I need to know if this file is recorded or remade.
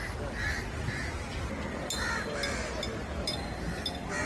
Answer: recorded